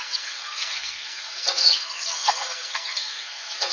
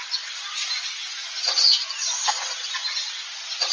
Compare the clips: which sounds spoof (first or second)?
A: first